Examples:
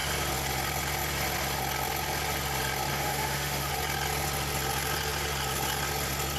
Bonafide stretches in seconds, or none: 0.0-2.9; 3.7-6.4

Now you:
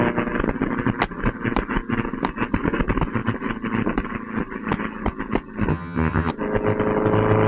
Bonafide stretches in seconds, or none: 0.0-5.7; 6.3-7.5

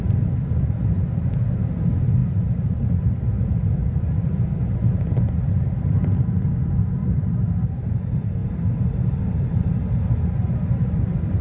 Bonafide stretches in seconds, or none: 0.0-7.0; 8.0-11.4

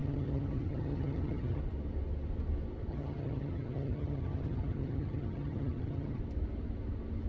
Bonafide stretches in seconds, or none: 1.6-2.9; 6.2-7.3

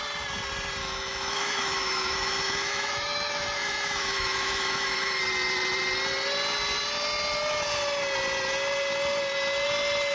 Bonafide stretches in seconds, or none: 0.0-0.8; 5.2-10.1